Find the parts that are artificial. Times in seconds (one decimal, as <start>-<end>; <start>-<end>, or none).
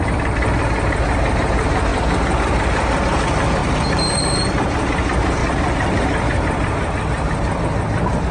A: 3.6-4.2